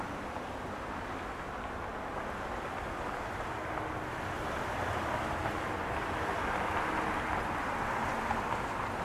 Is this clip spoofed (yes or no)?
no